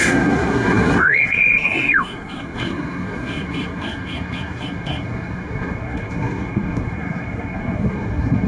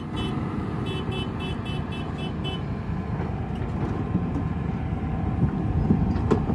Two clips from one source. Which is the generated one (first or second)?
first